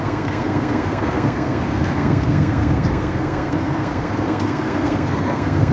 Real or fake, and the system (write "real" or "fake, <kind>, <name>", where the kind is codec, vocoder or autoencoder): fake, codec, SNAC